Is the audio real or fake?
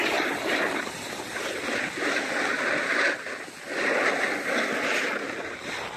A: real